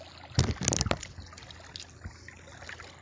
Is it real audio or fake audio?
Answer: real